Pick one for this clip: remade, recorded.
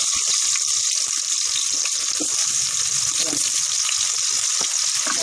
recorded